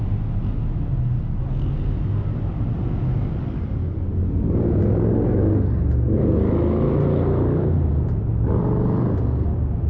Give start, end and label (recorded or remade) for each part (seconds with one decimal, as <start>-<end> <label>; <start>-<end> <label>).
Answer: 0.0-9.9 recorded